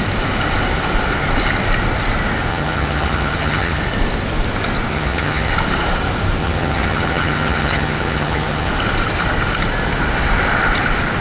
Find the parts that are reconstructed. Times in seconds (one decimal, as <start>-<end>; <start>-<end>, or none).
2.5-3.8; 4.9-5.5; 6.4-8.7